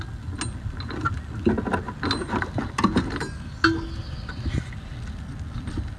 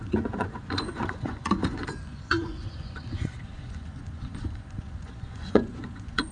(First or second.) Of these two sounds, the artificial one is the second